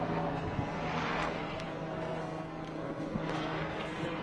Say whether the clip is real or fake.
fake